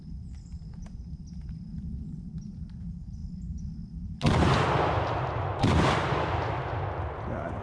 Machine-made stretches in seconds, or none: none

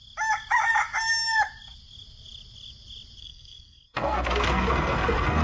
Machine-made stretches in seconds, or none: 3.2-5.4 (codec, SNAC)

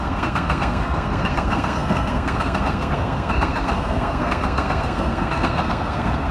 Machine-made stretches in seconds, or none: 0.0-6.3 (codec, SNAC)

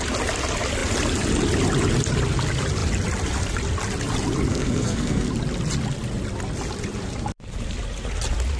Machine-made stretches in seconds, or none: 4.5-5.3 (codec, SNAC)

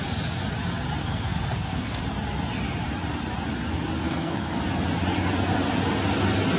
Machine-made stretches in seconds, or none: 1.0-2.0 (codec, SNAC); 4.0-4.6

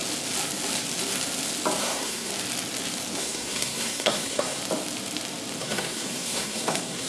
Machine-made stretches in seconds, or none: 1.8-2.3 (codec, SNAC); 3.2-4.6; 5.6-7.1

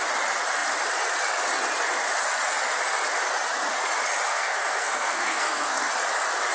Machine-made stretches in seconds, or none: 4.3-5.9 (codec, SNAC)

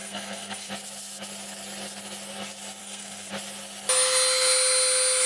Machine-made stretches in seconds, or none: 0.0-0.7 (codec, SNAC); 2.8-3.3